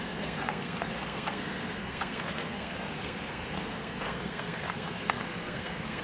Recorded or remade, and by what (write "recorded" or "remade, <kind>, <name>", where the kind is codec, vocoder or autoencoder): remade, codec, SNAC